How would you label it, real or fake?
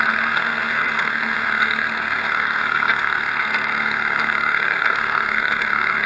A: fake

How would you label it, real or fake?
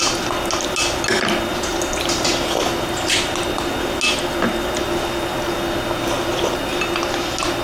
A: real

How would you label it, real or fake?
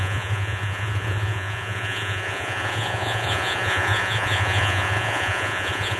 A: fake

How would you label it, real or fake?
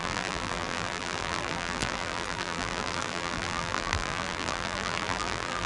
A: fake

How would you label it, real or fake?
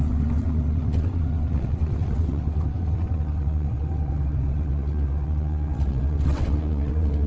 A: fake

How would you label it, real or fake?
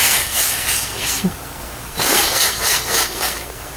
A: fake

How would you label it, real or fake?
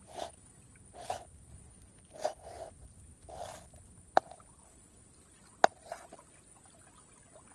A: real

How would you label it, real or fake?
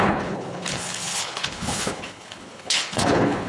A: fake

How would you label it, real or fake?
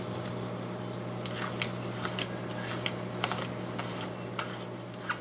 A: real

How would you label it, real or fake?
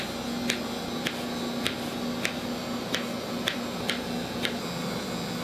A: real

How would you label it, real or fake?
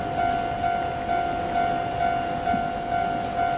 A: real